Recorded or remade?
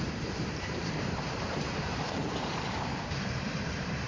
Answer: remade